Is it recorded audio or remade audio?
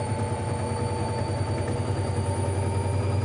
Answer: recorded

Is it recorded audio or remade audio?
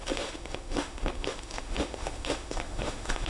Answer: remade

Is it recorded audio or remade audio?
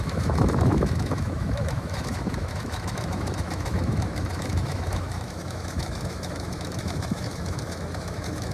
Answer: remade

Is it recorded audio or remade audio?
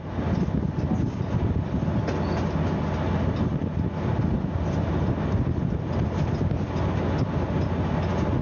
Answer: recorded